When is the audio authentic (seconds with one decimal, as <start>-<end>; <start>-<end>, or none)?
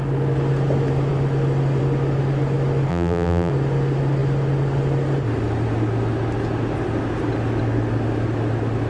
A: 0.0-2.9; 3.5-8.9